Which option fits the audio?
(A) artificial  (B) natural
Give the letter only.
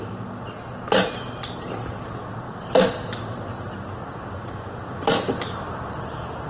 B